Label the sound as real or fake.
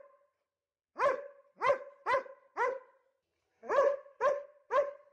real